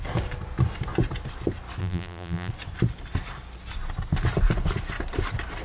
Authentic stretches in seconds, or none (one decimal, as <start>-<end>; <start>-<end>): 0.0-1.8; 2.5-5.6